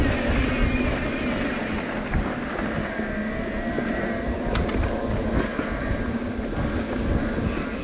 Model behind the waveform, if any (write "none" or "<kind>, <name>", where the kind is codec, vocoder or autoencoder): none